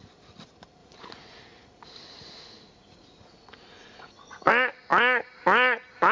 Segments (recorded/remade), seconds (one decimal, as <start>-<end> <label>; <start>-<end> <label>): 0.0-0.8 recorded; 0.8-4.5 remade; 4.5-6.1 recorded